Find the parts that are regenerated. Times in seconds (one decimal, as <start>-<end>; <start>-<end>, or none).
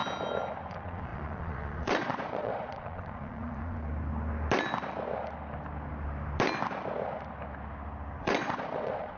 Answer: 0.7-3.9; 8.2-9.2